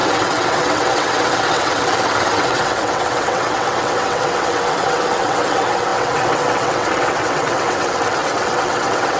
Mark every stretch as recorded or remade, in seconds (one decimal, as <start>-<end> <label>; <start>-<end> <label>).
0.0-9.2 remade